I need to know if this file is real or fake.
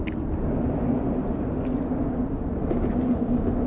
real